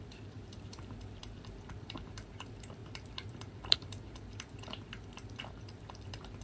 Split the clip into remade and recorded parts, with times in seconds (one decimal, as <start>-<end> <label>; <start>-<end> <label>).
0.0-6.4 remade